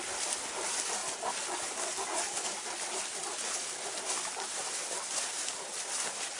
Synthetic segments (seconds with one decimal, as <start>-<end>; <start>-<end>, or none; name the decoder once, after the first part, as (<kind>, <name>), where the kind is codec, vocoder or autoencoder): none